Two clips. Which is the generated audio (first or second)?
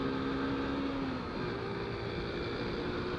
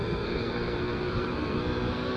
second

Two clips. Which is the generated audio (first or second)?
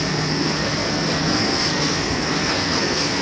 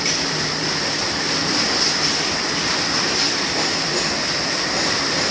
first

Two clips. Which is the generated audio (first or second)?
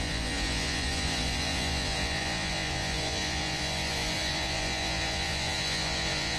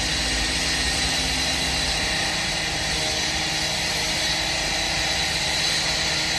first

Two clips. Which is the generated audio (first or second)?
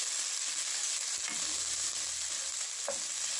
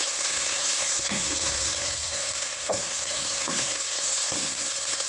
second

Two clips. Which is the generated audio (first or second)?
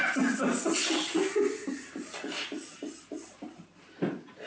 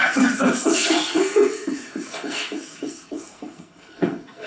second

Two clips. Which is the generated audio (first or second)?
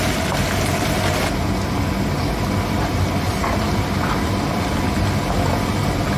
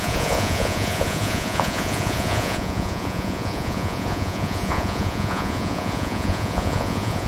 second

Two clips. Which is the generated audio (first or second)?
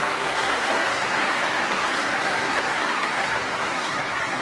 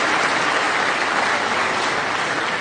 first